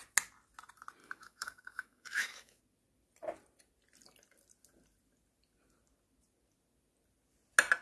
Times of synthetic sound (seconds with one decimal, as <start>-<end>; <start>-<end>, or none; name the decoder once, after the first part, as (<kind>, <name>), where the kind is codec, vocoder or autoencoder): 1.0-2.6 (autoencoder, DAC-VAE)